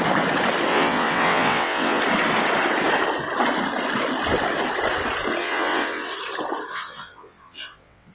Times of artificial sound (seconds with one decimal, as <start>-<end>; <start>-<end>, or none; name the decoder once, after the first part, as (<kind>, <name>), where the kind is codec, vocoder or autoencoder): 0.7-2.0 (vocoder, WaveNeXt); 5.4-6.1; 6.7-8.1